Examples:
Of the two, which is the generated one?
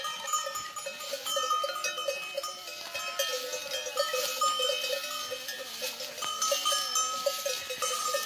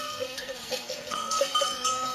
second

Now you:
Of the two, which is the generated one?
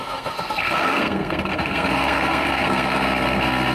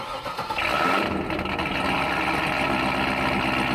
first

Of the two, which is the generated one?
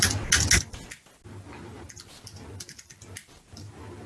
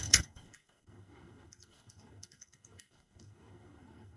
second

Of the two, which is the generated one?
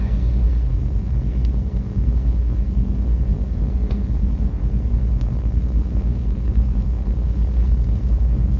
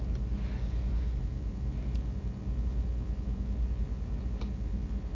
first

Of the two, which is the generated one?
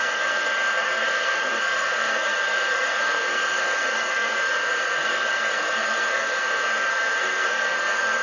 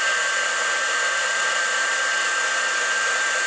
first